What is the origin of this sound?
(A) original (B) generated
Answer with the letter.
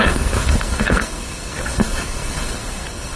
B